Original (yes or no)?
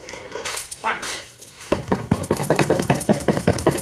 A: no